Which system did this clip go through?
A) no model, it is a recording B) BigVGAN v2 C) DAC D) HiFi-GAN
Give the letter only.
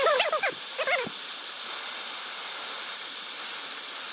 A